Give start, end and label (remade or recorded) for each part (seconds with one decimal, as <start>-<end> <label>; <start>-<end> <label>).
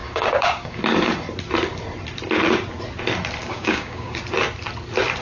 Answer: 0.0-0.8 remade; 0.8-3.4 recorded; 3.4-4.2 remade; 4.2-5.2 recorded